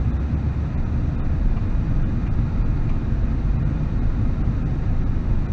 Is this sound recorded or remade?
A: recorded